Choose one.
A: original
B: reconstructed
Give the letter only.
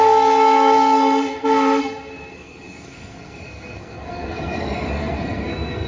B